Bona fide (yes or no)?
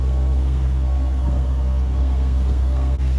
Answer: no